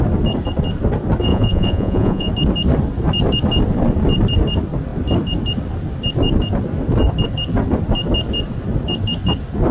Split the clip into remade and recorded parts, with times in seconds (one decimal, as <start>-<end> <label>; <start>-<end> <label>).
0.0-1.3 recorded; 1.3-2.3 remade; 2.3-9.7 recorded